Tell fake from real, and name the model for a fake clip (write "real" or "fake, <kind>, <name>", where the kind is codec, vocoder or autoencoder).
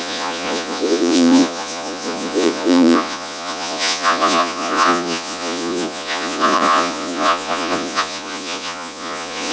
fake, vocoder, Vocos